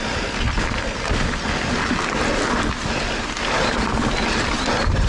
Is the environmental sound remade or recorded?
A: recorded